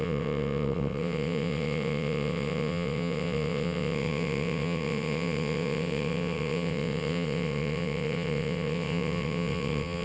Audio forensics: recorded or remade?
remade